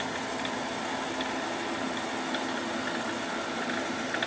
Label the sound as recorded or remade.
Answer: recorded